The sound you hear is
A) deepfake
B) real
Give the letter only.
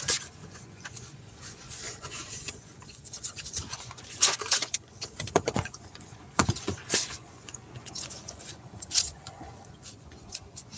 A